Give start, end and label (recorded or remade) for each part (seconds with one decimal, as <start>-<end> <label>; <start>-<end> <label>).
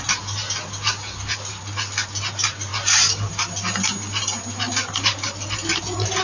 0.0-6.2 recorded